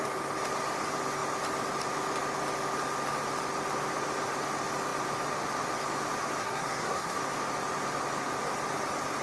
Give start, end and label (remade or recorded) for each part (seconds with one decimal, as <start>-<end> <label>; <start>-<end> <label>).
0.0-6.4 recorded; 6.4-7.2 remade; 7.2-9.2 recorded